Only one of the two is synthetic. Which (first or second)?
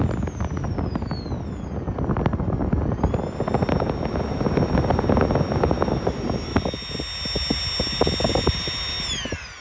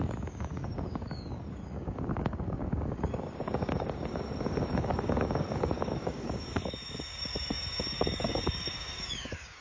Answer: second